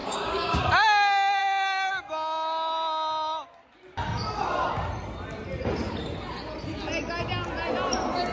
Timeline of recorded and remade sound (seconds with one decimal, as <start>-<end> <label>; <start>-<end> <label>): 0.0-0.6 remade; 0.6-8.3 recorded